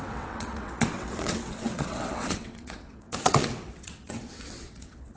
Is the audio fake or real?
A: fake